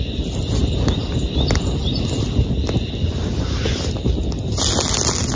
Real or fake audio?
real